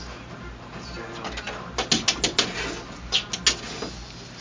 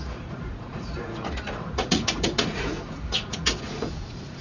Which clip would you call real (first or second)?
first